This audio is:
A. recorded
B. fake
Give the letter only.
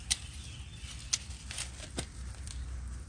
A